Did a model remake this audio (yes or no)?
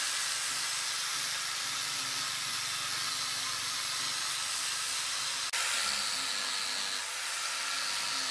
no